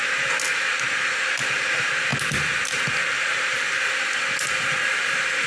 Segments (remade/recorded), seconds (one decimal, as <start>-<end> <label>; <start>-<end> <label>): 0.0-5.5 recorded